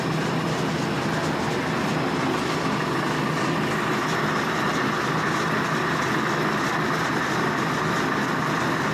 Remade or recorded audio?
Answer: recorded